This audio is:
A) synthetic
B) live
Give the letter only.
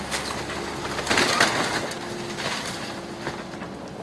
B